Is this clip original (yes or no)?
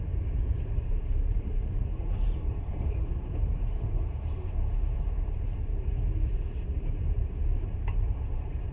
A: no